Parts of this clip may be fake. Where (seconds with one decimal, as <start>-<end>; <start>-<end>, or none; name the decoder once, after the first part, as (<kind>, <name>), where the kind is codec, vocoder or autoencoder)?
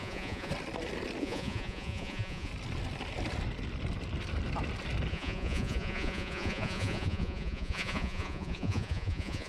0.0-0.5 (vocoder, Vocos); 1.2-2.5; 5.1-9.5